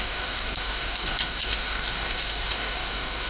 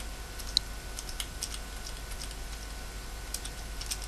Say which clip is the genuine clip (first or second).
second